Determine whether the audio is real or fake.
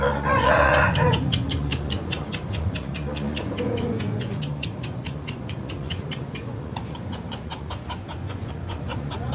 fake